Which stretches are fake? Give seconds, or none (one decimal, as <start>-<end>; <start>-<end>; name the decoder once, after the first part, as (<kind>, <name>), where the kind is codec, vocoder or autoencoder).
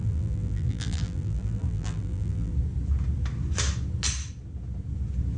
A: 0.0-2.5 (vocoder, BigVGAN v2)